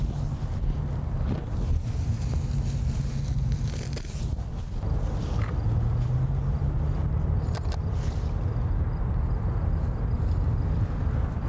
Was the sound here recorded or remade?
recorded